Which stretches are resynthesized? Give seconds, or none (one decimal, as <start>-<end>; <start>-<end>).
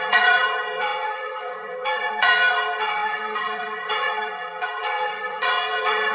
0.0-6.1